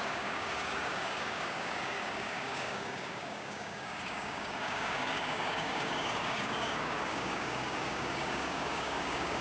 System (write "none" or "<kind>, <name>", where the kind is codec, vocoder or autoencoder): codec, DAC